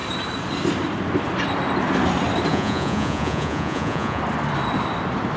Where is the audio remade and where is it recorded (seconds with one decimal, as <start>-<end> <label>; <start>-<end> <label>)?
0.0-2.5 recorded; 2.5-4.2 remade; 4.2-5.4 recorded